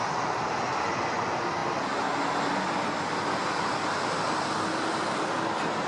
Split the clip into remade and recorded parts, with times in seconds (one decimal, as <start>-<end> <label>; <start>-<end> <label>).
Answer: 0.0-5.9 recorded